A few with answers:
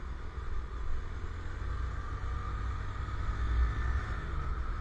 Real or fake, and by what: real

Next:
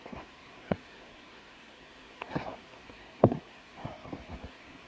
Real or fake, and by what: fake, codec, SNAC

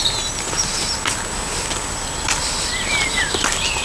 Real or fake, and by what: real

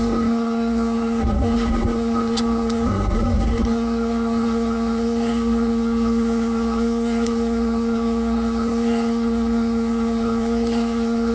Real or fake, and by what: fake, codec, SNAC